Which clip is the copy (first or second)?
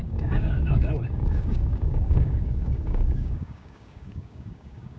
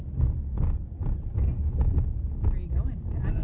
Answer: first